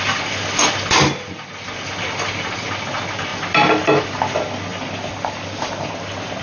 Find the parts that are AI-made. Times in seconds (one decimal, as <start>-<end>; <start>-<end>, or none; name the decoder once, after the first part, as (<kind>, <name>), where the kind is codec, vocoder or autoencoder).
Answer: 4.7-5.9 (vocoder, BigVGAN v2)